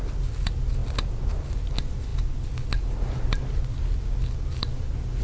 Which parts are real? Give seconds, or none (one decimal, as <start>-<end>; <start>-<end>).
0.0-5.2